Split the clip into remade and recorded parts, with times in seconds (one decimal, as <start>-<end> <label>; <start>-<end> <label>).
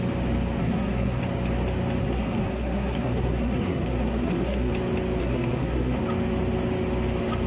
0.0-0.6 recorded; 0.6-1.2 remade; 1.2-2.0 recorded; 2.0-4.7 remade; 4.7-5.2 recorded; 5.2-6.0 remade; 6.0-7.5 recorded